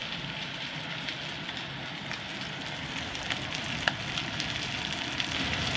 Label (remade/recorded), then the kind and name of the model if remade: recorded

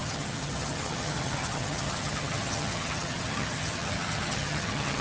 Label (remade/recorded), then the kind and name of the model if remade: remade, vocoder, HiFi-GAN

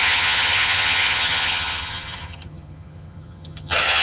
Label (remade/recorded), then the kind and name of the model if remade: remade, vocoder, HiFi-GAN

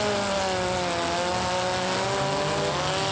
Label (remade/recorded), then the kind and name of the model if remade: recorded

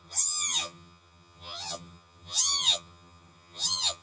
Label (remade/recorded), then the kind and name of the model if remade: remade, vocoder, HiFi-GAN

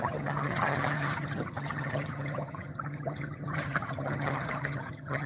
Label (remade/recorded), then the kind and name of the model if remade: remade, vocoder, HiFi-GAN